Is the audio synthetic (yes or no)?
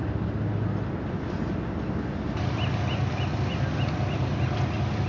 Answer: no